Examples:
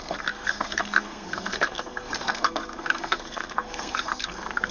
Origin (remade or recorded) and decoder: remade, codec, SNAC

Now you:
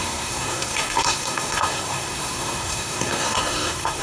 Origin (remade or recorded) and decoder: remade, codec, SNAC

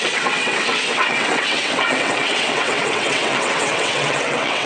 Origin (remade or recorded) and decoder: remade, vocoder, WaveNeXt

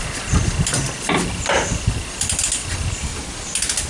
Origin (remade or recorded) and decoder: recorded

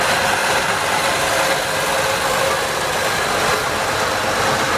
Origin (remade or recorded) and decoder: recorded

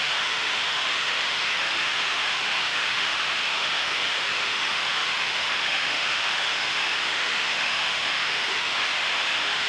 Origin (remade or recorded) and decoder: remade, autoencoder, DAC-VAE